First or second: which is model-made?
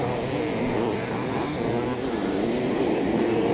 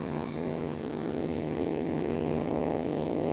second